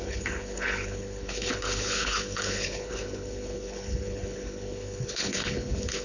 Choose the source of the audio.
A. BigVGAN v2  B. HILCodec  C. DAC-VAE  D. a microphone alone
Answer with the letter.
B